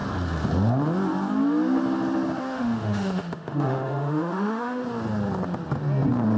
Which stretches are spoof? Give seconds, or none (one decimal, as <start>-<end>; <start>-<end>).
2.4-4.8